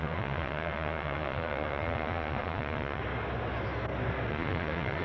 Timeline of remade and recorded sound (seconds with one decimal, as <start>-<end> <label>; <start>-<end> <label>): 0.0-3.0 remade; 3.0-4.3 recorded; 4.3-5.0 remade

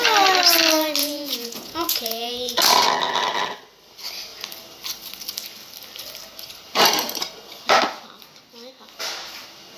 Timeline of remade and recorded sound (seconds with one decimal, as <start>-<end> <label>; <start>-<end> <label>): 0.0-1.0 recorded; 1.0-2.3 remade; 2.3-9.8 recorded

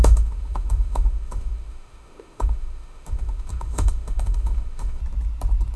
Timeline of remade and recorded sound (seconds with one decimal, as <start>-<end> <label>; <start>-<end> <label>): 0.0-5.0 remade; 5.0-5.8 recorded

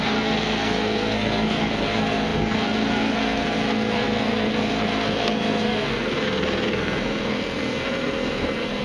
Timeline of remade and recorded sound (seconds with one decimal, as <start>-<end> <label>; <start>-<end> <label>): 0.0-8.8 remade

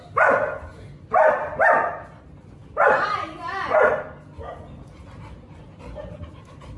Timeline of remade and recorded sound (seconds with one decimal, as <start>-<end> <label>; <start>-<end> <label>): 0.0-0.7 recorded; 0.7-1.3 remade; 1.3-6.8 recorded